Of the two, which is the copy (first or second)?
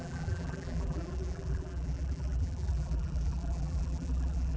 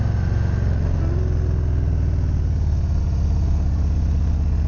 first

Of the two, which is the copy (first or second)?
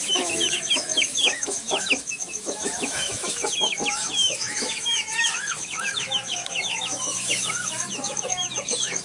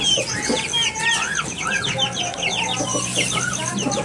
first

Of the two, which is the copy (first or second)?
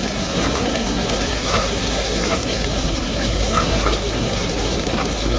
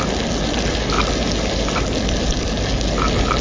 first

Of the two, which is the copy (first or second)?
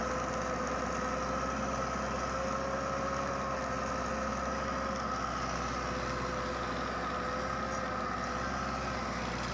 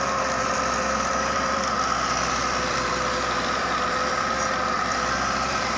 second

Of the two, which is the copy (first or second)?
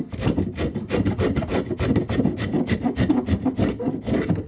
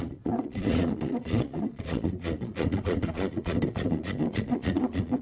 second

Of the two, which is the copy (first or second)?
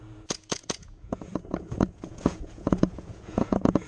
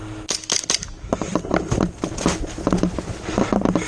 first